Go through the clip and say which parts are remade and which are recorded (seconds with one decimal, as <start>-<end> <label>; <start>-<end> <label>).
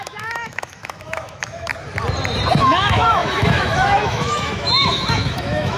0.0-1.7 remade; 1.7-2.6 recorded; 2.6-5.8 remade